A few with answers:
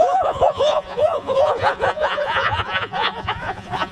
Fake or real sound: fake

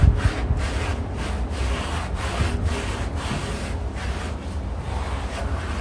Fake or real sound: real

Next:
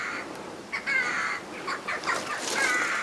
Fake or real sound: real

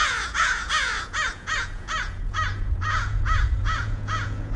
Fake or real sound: fake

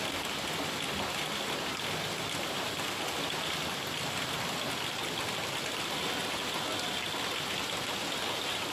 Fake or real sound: real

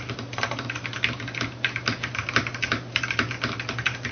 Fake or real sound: real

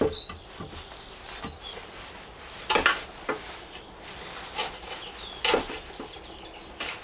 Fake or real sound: real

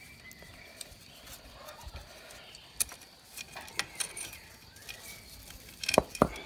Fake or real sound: real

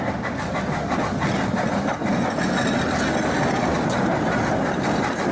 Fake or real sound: real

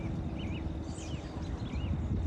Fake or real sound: real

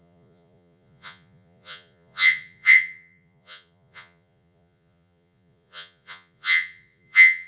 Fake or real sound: fake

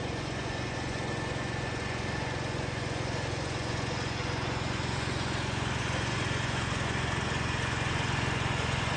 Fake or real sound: fake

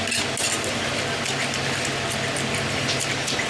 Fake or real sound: real